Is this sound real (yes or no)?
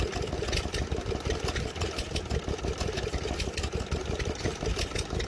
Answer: yes